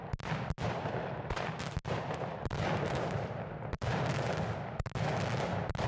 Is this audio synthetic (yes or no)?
no